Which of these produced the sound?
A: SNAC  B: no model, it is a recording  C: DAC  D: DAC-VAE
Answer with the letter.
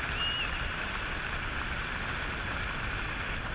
B